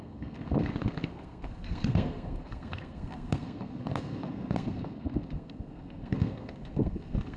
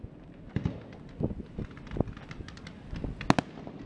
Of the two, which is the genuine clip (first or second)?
second